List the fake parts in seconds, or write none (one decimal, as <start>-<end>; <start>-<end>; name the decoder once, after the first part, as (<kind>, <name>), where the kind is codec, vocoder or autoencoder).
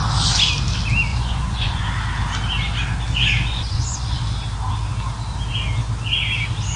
1.1-1.8 (vocoder, Vocos); 3.5-4.2